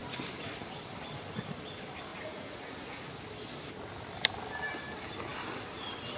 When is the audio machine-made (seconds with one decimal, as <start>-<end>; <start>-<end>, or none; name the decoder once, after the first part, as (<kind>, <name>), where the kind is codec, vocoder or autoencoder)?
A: 2.1-3.2 (vocoder, Vocos)